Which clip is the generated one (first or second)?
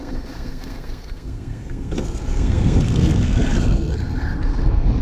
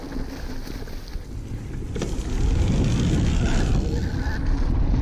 first